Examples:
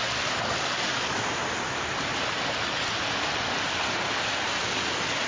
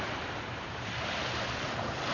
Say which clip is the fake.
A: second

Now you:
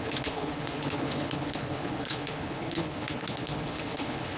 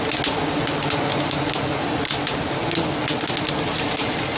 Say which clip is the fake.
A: first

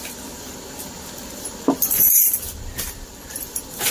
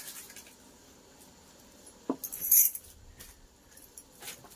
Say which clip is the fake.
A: first